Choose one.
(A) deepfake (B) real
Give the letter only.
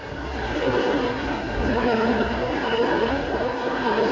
A